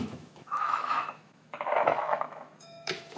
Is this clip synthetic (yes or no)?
yes